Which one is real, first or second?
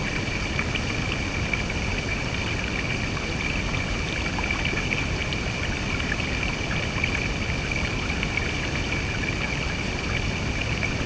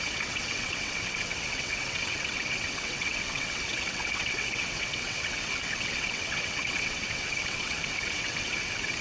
first